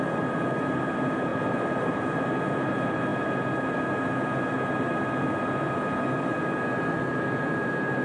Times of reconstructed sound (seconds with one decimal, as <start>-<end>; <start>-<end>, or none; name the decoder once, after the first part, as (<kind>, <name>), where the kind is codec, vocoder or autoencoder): none